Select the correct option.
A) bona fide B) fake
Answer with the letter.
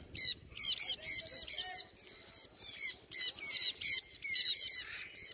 A